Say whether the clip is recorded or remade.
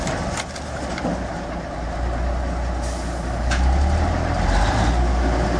recorded